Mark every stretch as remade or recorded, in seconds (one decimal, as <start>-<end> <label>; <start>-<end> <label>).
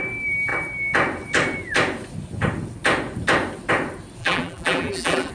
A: 0.0-4.2 recorded; 4.2-5.3 remade